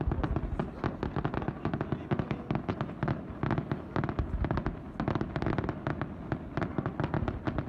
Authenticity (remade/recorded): recorded